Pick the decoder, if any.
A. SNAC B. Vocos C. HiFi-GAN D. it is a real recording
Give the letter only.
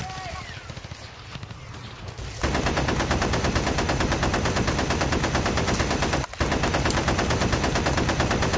D